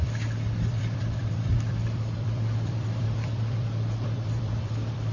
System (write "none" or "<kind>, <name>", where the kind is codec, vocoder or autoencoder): vocoder, BigVGAN v2